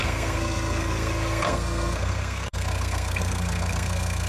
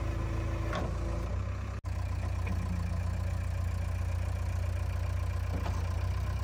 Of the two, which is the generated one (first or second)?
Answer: first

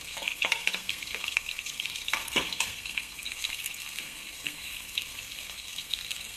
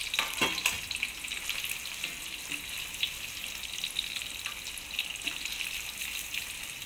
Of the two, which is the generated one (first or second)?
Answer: first